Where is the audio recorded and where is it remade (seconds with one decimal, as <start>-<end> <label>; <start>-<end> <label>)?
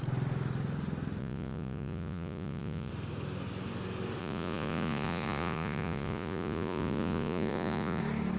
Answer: 0.0-1.2 recorded; 1.2-2.9 remade; 2.9-4.2 recorded; 4.2-8.0 remade; 8.0-8.4 recorded